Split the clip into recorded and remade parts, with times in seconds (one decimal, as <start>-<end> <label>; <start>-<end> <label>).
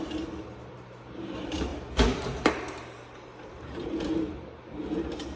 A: 0.0-1.7 remade; 1.7-2.5 recorded; 2.5-5.4 remade